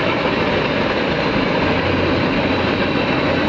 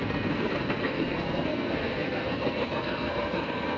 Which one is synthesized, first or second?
second